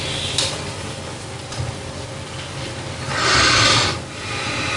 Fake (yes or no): no